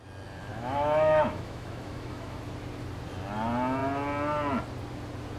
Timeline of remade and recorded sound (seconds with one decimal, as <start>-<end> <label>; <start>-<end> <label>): 0.0-0.5 recorded; 0.5-2.4 remade; 2.4-5.4 recorded